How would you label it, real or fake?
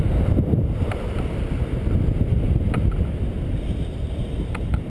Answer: real